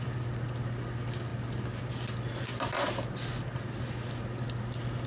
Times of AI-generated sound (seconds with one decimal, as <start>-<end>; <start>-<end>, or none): none